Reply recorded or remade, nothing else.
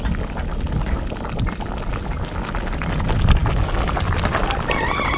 recorded